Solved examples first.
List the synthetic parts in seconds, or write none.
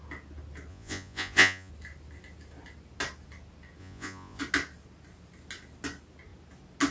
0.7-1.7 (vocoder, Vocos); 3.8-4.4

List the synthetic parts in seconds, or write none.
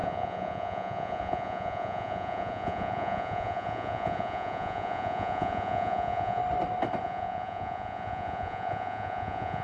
0.0-6.4 (vocoder, Vocos); 7.0-9.6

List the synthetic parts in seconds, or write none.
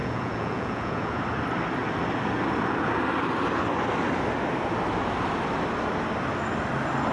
0.0-1.2 (vocoder, Vocos)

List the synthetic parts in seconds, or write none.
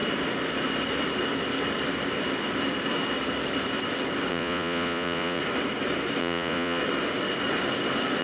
4.3-5.4 (vocoder, Vocos); 6.2-6.8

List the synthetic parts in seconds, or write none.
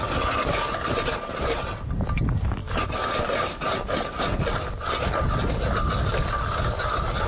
none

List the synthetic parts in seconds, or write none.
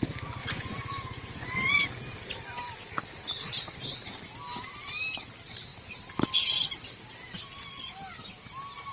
0.4-1.9 (vocoder, Vocos)